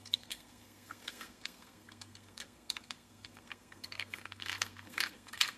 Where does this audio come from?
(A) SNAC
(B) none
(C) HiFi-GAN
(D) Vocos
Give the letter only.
A